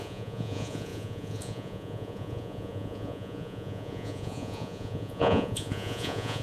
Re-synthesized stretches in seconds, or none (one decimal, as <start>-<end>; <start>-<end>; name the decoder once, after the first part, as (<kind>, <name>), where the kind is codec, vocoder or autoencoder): 0.0-6.4 (vocoder, Vocos)